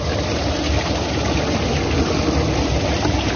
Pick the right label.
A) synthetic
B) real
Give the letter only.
B